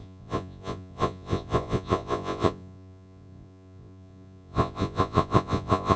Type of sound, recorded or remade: remade